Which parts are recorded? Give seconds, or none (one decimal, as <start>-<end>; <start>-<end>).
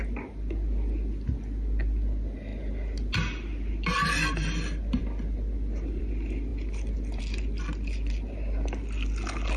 0.0-9.6